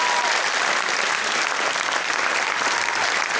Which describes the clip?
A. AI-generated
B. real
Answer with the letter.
B